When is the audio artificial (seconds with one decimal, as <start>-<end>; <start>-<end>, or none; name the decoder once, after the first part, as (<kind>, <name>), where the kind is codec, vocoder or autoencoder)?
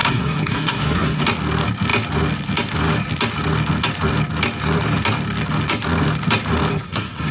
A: 0.0-1.2 (codec, SNAC); 6.7-7.3